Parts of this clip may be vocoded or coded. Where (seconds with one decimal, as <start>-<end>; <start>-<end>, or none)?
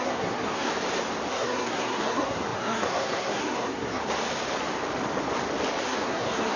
0.0-0.7; 1.3-4.0; 5.8-6.6